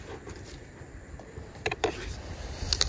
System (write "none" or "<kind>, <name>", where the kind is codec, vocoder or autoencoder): vocoder, BigVGAN v2